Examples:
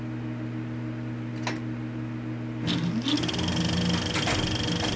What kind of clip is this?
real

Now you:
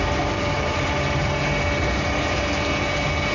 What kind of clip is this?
real